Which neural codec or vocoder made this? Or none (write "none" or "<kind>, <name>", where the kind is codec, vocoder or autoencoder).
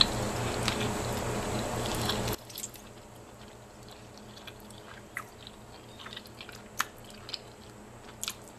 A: none